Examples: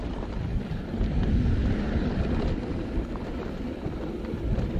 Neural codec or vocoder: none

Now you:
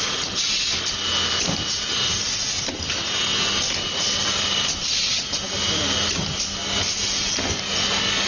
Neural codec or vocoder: none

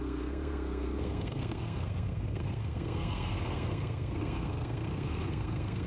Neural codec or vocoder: codec, SNAC